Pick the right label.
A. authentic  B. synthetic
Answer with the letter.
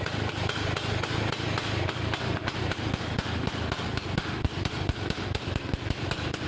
A